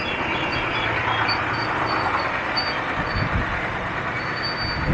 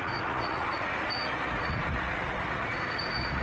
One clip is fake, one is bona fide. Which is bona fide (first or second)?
first